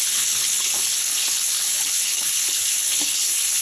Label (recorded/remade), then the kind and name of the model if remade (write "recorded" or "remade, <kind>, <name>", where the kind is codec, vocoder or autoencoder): remade, codec, HILCodec